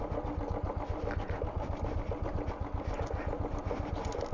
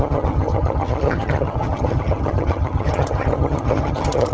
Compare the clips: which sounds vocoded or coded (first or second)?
second